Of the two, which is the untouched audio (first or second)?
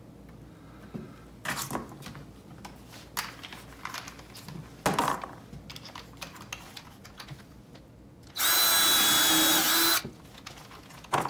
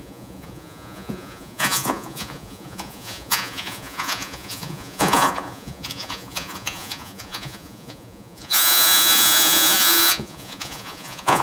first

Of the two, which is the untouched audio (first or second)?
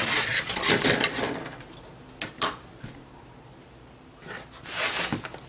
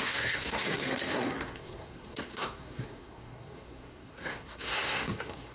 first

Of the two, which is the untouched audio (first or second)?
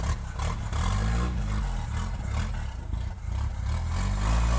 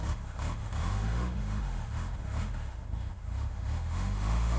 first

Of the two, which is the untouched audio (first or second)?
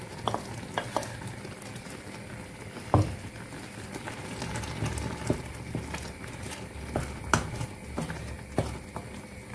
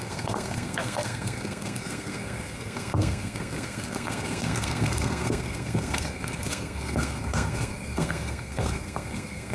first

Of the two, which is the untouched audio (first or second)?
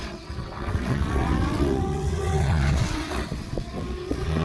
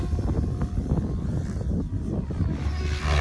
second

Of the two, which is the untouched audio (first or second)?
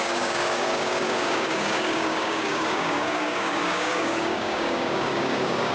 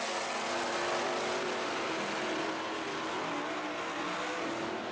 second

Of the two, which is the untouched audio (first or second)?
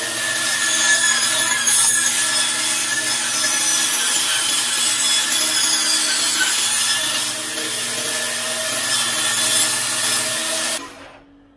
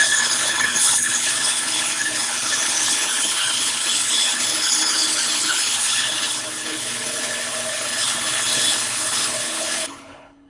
first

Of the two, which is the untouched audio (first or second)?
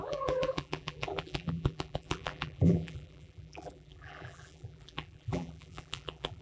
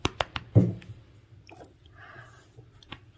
second